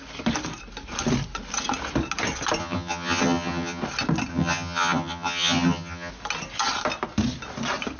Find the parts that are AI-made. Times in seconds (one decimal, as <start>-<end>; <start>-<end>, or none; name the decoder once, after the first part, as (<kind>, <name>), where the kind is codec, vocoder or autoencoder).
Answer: 2.6-3.8 (vocoder, HiFi-GAN); 4.3-6.1

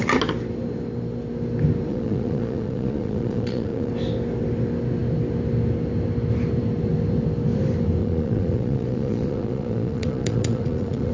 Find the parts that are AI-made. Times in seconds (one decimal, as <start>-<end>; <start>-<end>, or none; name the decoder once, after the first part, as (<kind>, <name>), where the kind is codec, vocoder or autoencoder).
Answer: 1.9-3.9 (vocoder, Vocos); 8.0-11.1

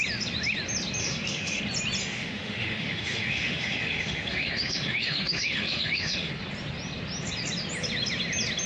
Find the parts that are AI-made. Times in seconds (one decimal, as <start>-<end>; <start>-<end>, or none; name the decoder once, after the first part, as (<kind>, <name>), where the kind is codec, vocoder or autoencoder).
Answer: 1.0-1.6 (autoencoder, DAC-VAE); 2.0-6.3

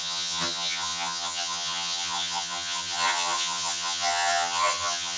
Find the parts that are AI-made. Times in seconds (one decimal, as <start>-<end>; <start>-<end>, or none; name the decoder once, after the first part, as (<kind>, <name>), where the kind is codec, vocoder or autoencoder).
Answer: 0.0-5.2 (vocoder, HiFi-GAN)

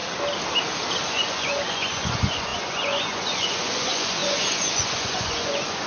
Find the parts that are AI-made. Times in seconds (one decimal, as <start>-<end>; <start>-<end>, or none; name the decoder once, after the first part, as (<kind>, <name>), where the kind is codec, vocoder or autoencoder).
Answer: 1.1-5.9 (vocoder, Vocos)

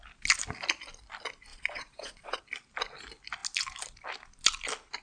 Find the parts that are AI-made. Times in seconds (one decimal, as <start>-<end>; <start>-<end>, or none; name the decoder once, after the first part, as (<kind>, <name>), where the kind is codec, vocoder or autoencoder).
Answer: 1.5-2.4 (vocoder, Vocos)

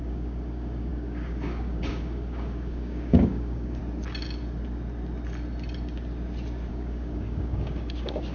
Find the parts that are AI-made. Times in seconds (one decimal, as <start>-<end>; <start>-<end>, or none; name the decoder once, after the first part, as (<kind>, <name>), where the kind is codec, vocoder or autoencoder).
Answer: 0.0-3.8 (codec, DAC); 6.7-8.3

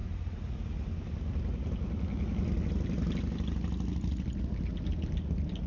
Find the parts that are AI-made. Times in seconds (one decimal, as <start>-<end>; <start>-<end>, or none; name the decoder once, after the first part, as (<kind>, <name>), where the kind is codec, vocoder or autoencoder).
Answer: none